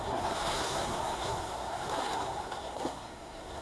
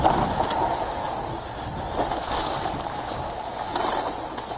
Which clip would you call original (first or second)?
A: second